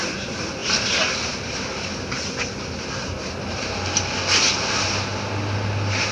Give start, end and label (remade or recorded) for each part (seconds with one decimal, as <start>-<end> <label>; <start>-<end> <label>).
0.0-6.1 recorded